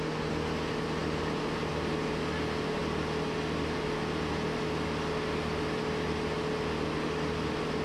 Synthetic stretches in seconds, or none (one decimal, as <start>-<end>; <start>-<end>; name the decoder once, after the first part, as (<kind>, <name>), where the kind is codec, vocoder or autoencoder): none